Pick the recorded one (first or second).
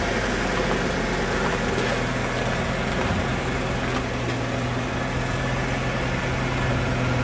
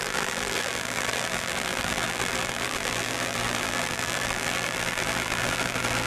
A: first